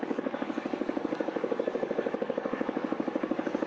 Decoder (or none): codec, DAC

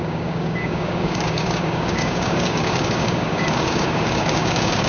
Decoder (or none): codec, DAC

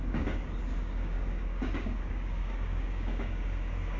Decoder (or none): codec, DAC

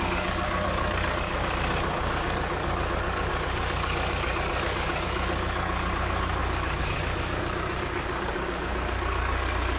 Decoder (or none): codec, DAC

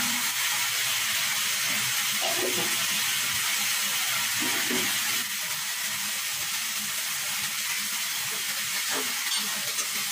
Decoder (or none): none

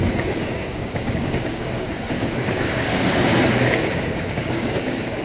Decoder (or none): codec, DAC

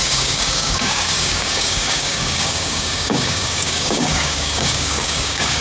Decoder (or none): codec, DAC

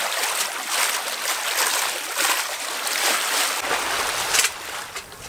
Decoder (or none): none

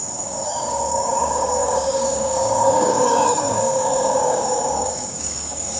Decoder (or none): codec, DAC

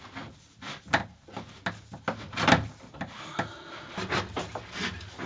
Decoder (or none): none